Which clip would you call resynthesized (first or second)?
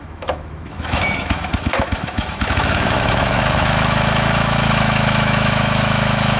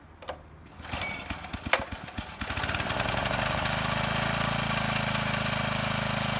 first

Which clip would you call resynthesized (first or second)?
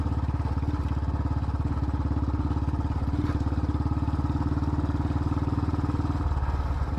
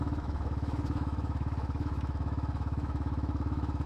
second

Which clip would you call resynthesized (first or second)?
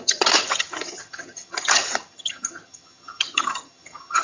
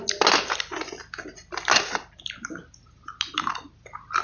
first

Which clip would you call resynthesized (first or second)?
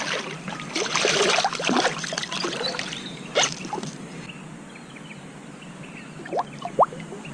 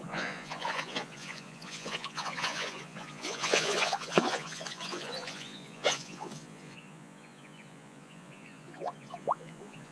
second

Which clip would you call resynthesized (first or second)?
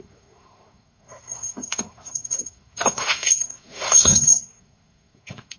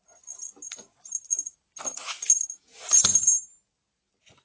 first